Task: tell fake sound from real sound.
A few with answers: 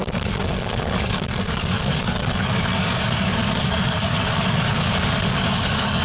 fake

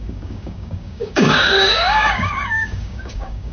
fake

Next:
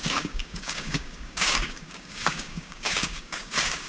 fake